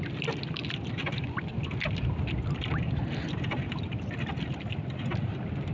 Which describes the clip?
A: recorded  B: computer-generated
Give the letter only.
A